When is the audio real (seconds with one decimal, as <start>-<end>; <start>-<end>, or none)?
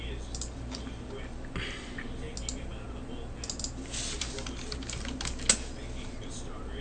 0.0-6.8